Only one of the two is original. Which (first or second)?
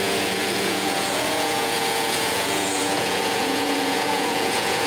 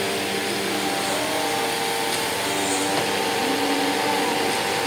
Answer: second